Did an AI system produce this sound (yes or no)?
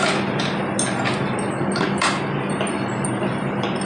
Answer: no